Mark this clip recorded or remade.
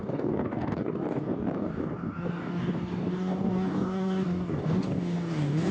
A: remade